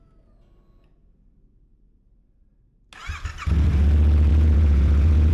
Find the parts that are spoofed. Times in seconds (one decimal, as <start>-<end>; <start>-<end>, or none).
4.3-5.3